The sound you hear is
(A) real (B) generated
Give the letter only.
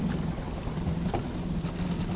A